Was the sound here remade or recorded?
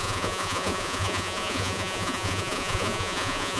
remade